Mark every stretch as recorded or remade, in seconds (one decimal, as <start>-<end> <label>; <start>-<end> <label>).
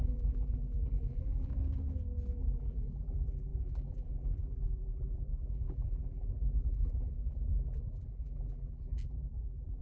0.0-1.5 remade; 1.5-2.4 recorded; 2.4-9.8 remade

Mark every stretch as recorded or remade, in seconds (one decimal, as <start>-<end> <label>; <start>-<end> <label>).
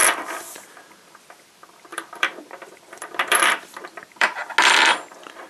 0.0-0.7 recorded; 0.7-4.4 remade; 4.4-5.5 recorded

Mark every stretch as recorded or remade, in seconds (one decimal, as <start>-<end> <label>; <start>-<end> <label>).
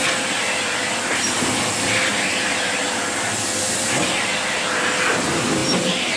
0.0-5.6 recorded; 5.6-6.2 remade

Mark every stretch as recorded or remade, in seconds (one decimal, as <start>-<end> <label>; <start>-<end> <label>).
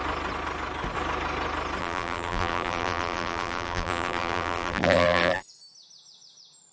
0.0-1.8 recorded; 1.8-5.4 remade; 5.4-6.7 recorded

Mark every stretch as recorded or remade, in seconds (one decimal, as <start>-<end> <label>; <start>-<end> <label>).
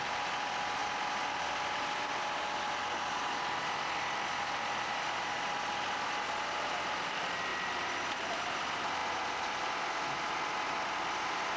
0.0-7.5 remade; 7.5-8.1 recorded; 8.1-9.0 remade; 9.0-10.6 recorded; 10.6-11.6 remade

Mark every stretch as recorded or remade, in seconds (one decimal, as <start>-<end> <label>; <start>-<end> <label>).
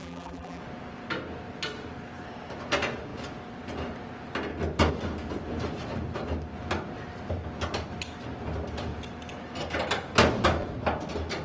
0.0-0.6 remade; 0.6-11.4 recorded